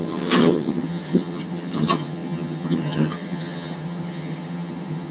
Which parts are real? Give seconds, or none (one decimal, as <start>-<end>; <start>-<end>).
none